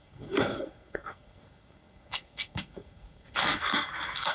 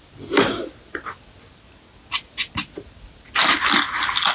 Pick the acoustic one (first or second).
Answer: second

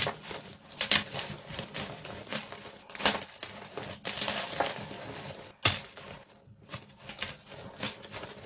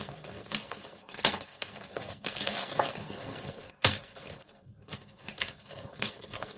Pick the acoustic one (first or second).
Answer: first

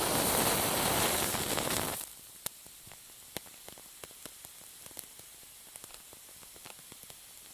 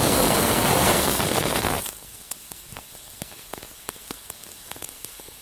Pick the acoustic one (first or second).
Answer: first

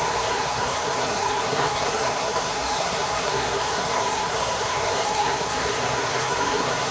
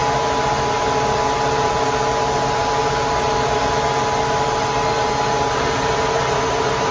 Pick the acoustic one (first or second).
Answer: second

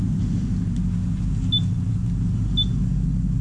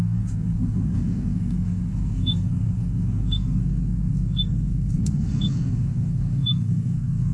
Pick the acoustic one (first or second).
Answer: first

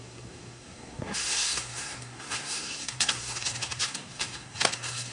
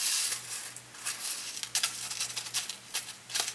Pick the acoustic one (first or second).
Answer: second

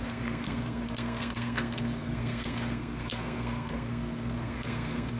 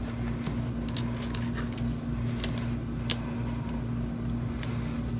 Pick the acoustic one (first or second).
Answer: second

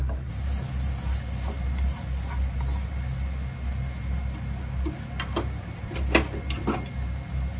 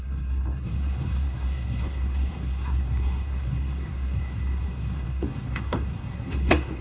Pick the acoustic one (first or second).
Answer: first